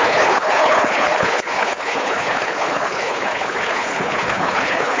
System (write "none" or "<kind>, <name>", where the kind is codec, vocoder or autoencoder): codec, HILCodec